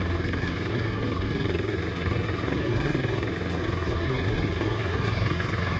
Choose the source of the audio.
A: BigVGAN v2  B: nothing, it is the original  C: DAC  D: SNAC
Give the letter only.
D